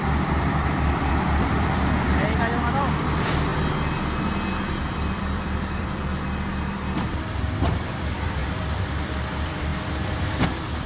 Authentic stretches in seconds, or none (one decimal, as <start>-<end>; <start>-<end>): 3.5-4.7; 9.7-10.2